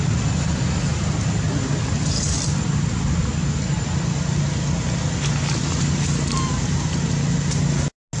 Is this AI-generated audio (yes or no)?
no